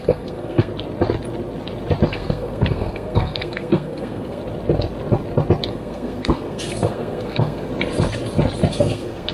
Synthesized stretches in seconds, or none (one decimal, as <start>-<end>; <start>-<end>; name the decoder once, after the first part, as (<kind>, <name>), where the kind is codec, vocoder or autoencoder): 0.0-0.7 (codec, SNAC); 2.1-4.4; 5.7-7.7; 8.7-9.3